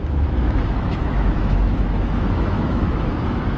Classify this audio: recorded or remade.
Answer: remade